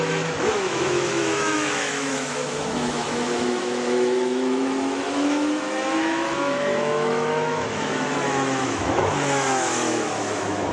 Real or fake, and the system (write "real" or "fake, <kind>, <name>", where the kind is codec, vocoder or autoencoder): fake, autoencoder, DAC-VAE